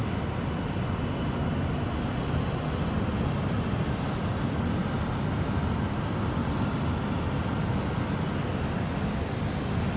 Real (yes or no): yes